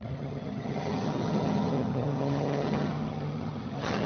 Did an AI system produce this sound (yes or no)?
yes